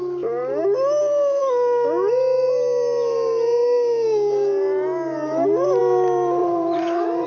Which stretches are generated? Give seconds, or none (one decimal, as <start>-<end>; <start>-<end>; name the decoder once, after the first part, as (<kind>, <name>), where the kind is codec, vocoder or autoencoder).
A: 6.4-7.3 (vocoder, Vocos)